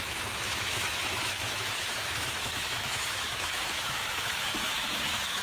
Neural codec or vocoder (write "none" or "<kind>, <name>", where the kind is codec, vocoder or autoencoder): autoencoder, DAC-VAE